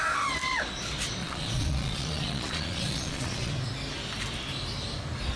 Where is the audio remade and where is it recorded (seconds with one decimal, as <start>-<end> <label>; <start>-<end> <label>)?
0.0-1.2 recorded; 1.2-3.5 remade; 3.5-5.4 recorded